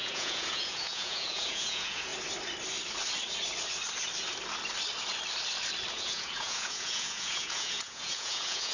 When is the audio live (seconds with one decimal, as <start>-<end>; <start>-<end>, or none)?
2.1-5.9